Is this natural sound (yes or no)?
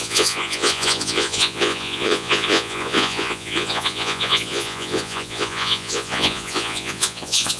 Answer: no